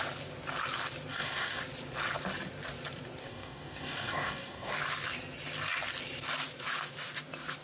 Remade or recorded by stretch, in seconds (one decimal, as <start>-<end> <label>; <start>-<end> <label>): 0.0-1.1 recorded; 1.1-1.6 remade; 1.6-3.2 recorded; 3.2-4.7 remade; 4.7-7.6 recorded